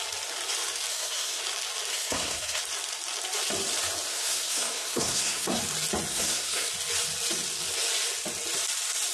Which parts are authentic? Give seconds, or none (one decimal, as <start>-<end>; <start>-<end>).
0.0-0.9; 1.4-1.9; 2.6-4.1; 5.6-6.1; 6.7-9.1